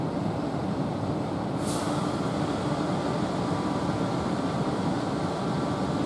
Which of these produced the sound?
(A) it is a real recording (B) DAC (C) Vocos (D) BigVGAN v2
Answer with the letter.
D